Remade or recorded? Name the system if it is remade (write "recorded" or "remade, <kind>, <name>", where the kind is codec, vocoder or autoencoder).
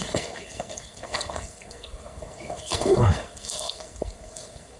remade, codec, SNAC